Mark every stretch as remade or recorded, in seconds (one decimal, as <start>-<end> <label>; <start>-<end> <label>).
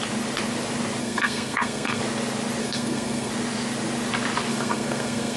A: 0.0-1.0 recorded; 1.0-2.0 remade; 2.0-2.6 recorded; 2.6-3.3 remade; 3.3-4.5 recorded; 4.5-5.4 remade